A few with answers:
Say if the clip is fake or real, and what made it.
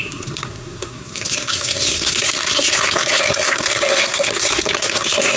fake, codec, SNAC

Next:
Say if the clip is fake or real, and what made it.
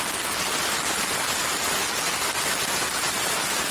real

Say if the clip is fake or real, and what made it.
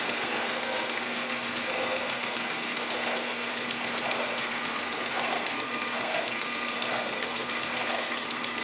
fake, codec, SNAC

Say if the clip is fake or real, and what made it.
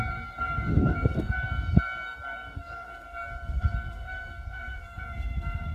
fake, codec, SNAC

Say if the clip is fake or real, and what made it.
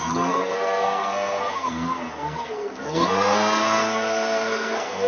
fake, codec, SNAC